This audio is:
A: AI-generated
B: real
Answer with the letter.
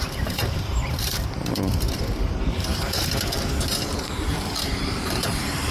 A